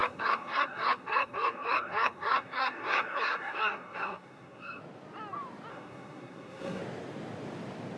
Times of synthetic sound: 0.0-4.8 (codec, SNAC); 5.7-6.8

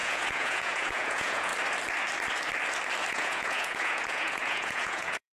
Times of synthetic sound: 0.0-1.5 (vocoder, Vocos); 3.1-5.3

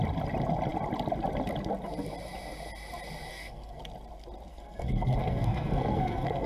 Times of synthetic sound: 3.3-3.8 (codec, SNAC); 4.5-6.5

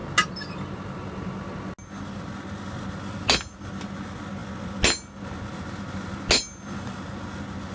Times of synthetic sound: none

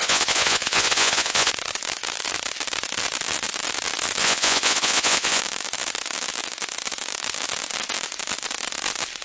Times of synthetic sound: 0.0-1.5 (vocoder, Vocos); 4.2-5.4

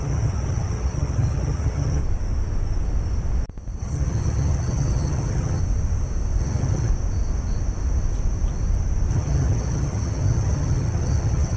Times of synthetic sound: 0.0-2.0 (vocoder, HiFi-GAN); 3.8-5.6; 6.4-6.9; 9.1-11.6